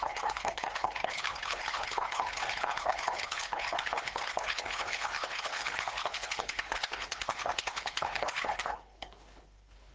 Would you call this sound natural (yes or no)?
no